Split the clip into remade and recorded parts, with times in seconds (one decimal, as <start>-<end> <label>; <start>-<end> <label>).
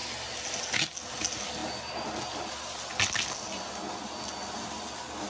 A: 0.0-5.3 recorded